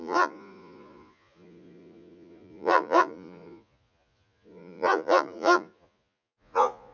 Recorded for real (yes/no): no